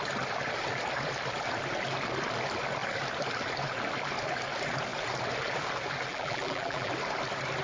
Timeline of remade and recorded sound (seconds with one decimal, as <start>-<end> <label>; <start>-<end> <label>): 0.0-6.1 recorded; 6.1-6.9 remade; 6.9-7.6 recorded